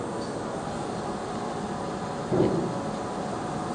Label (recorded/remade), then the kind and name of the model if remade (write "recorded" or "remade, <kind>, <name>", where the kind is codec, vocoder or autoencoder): recorded